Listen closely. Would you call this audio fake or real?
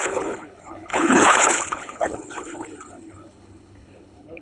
fake